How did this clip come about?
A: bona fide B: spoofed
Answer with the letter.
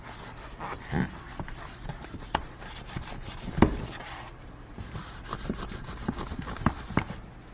B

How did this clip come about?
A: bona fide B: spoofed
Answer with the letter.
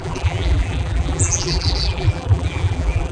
B